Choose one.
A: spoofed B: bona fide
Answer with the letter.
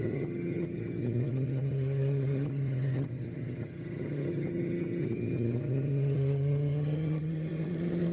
A